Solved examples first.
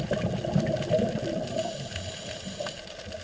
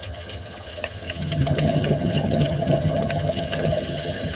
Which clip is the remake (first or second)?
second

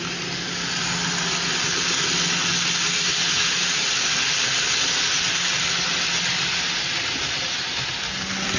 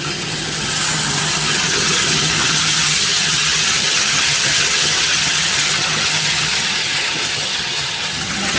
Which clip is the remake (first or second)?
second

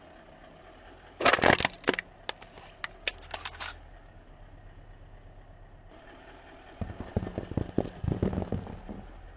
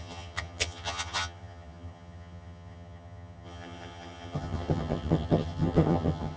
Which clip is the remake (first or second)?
second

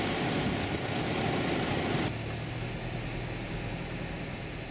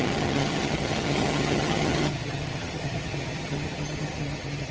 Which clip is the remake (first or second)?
second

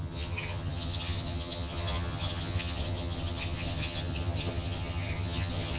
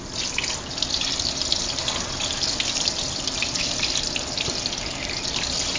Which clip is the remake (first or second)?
first